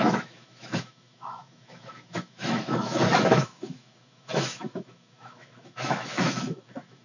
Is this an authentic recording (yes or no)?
no